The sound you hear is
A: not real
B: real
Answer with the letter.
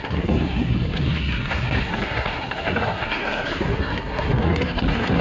A